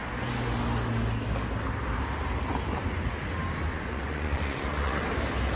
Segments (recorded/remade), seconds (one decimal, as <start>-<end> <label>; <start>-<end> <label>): 0.0-3.7 recorded; 3.7-5.1 remade; 5.1-5.6 recorded